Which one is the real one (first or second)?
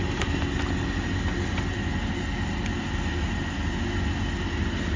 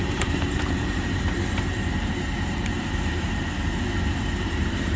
first